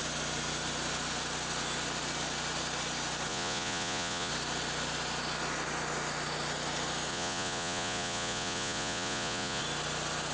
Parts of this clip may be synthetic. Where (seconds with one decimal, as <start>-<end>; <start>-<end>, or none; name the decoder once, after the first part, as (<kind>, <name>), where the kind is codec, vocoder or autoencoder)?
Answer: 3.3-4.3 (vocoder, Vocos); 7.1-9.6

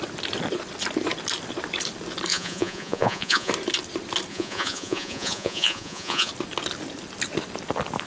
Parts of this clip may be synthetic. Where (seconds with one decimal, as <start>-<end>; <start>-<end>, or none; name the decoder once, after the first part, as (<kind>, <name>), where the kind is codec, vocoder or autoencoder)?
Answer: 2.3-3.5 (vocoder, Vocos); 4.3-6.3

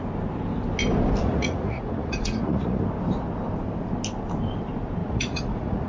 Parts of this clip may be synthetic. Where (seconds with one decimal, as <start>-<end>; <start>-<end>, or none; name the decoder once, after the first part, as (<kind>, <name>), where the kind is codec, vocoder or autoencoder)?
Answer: 1.2-2.8 (vocoder, Vocos); 5.0-5.9